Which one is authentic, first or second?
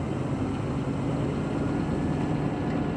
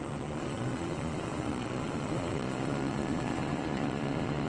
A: first